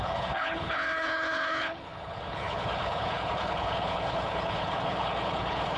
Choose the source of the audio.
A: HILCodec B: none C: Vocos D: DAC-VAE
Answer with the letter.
A